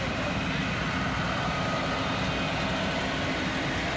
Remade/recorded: recorded